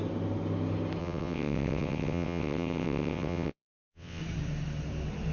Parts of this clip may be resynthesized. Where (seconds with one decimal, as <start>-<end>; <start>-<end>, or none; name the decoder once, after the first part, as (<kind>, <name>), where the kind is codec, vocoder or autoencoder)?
1.0-4.2 (vocoder, WaveNeXt)